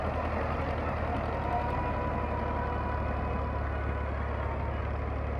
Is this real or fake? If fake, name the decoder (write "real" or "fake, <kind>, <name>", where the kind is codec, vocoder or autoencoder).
real